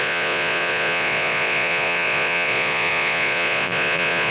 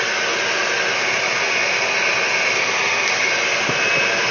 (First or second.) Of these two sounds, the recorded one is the second